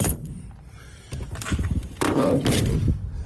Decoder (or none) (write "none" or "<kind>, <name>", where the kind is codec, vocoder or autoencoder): vocoder, BigVGAN v2